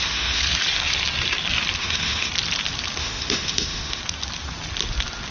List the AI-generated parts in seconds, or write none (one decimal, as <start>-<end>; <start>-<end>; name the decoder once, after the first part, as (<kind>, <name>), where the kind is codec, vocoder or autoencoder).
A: 0.0-0.4 (autoencoder, DAC-VAE); 1.8-2.3; 3.0-4.0

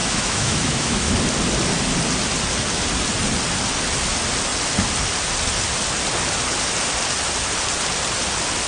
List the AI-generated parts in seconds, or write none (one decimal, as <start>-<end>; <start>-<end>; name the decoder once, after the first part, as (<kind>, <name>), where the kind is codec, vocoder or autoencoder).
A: 0.0-1.1 (autoencoder, DAC-VAE)

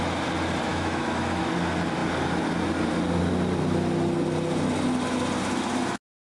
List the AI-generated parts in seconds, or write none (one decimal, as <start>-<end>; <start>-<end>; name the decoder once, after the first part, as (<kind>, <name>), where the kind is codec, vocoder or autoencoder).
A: 0.7-1.4 (autoencoder, DAC-VAE)

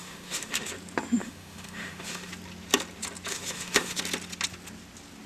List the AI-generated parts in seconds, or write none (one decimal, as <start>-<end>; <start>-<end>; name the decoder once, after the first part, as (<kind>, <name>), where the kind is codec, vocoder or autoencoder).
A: 0.0-0.7 (autoencoder, DAC-VAE); 1.2-2.3; 3.3-4.0

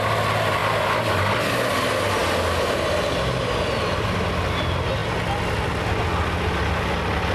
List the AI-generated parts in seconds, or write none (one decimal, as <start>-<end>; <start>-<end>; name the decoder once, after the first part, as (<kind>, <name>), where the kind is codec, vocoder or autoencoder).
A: none